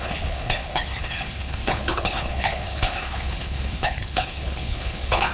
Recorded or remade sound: remade